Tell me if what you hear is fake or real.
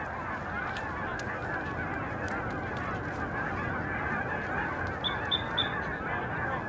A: real